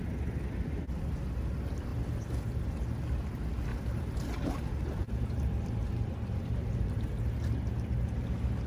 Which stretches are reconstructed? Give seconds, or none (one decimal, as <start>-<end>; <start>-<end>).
3.7-7.7